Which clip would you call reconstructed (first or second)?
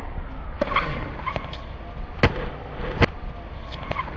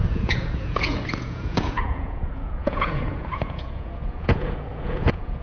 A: second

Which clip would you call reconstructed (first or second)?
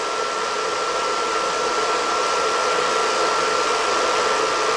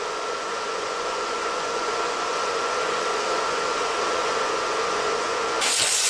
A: second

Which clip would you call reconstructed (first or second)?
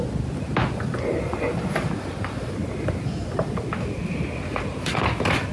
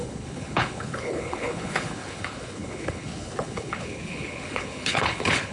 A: second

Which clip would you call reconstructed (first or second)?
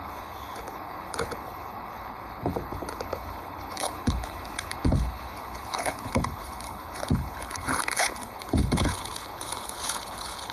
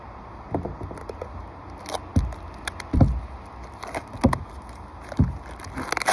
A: first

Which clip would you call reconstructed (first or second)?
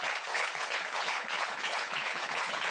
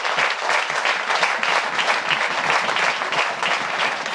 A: first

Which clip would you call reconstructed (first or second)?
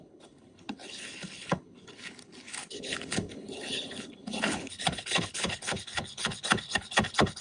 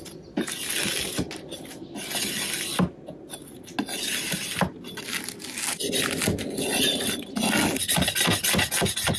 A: first